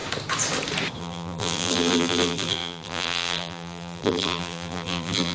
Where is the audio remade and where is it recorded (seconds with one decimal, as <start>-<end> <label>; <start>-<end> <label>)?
0.0-1.0 recorded; 1.0-5.3 remade